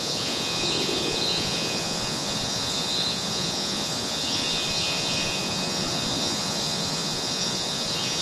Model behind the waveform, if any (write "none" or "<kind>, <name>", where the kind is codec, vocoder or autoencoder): vocoder, Vocos